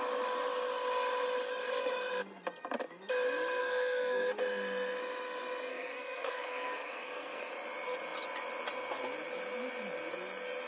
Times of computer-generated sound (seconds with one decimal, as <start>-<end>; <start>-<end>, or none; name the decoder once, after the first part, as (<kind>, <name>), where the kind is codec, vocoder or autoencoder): 3.6-4.3 (codec, SNAC); 5.7-7.5